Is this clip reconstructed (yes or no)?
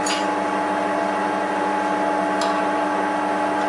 no